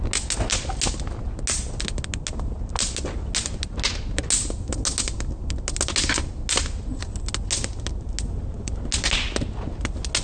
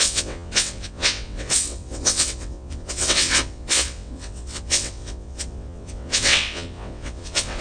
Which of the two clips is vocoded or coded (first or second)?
second